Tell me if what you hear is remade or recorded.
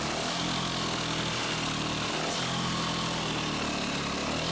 recorded